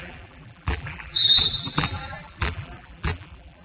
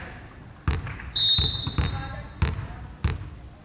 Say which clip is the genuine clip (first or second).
second